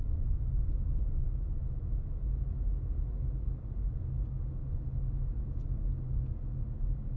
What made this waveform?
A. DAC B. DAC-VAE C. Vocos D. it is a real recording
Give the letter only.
D